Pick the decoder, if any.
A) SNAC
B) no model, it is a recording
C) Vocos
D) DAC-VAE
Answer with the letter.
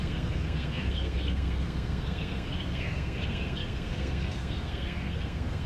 A